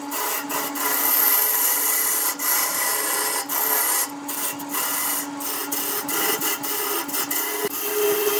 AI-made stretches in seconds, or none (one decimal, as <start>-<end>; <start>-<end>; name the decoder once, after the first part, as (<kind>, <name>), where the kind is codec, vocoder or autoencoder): none